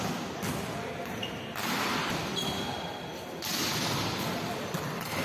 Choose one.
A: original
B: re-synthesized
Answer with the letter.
A